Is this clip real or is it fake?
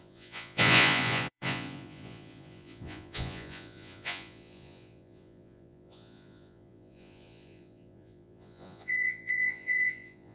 fake